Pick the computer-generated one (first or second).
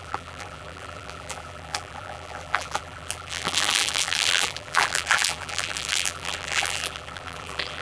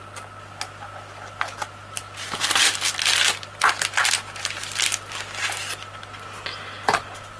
first